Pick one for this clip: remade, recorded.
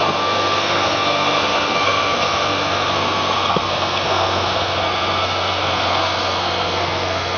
remade